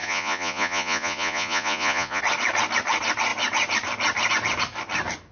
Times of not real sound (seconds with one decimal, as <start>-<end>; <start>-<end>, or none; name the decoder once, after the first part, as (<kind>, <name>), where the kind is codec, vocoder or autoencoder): 0.0-2.2 (vocoder, Vocos)